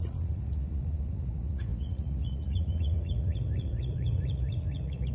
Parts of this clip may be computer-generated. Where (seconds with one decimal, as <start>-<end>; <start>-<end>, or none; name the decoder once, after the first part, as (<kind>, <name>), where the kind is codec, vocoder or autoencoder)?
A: 0.0-5.1 (vocoder, Vocos)